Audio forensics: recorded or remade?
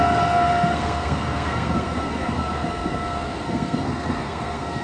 remade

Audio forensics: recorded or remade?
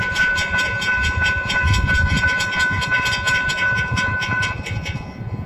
remade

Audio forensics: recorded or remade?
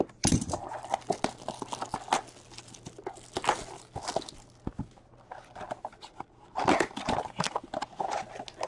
recorded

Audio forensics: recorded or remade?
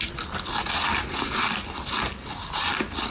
recorded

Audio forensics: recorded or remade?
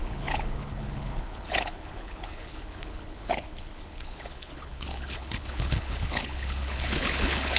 remade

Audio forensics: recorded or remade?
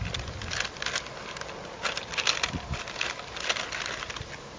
recorded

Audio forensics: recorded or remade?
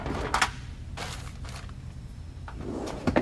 recorded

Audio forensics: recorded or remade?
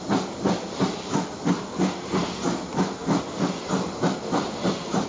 recorded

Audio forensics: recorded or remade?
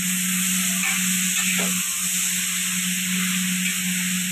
recorded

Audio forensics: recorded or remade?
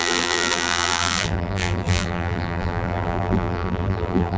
remade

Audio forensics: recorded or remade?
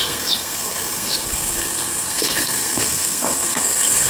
remade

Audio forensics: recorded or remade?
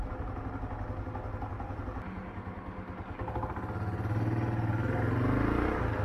recorded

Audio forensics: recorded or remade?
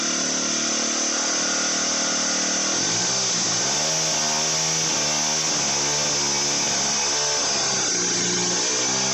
recorded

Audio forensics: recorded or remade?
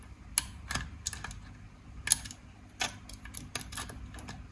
recorded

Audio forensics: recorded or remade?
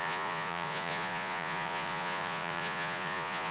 remade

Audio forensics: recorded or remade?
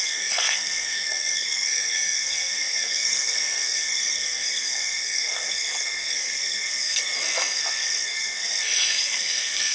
remade